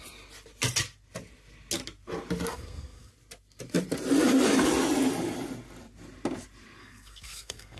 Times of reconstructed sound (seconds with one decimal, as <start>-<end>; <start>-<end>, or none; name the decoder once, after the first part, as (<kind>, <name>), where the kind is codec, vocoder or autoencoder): 2.5-3.1 (codec, SNAC); 6.8-7.8